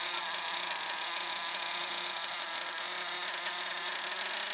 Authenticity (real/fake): real